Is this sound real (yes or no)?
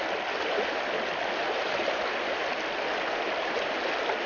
yes